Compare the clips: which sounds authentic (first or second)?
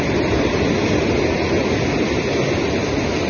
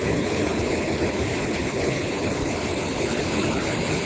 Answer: first